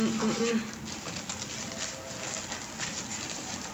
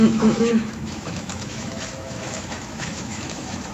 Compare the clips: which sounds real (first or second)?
first